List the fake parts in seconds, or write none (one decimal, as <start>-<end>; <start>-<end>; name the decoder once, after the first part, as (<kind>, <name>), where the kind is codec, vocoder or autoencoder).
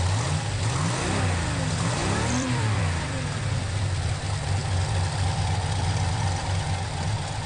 2.0-2.8 (vocoder, BigVGAN v2)